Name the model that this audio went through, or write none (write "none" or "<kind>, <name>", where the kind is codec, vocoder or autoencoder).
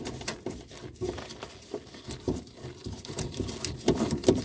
none